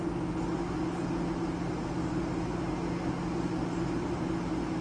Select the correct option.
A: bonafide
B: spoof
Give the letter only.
A